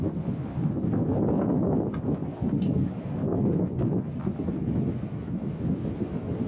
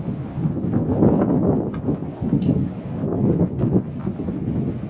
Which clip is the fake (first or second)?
first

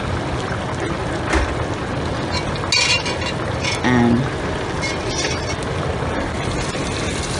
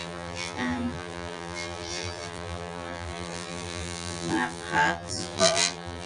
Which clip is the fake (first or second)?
second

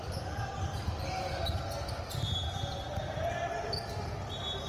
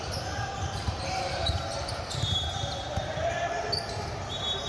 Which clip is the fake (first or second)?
second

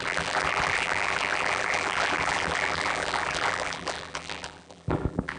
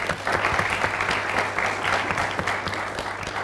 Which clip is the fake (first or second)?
first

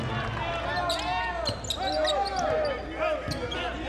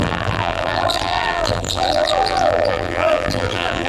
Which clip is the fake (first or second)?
second